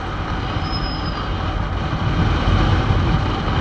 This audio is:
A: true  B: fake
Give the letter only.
A